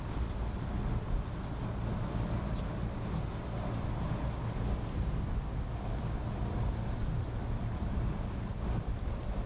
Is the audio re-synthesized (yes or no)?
no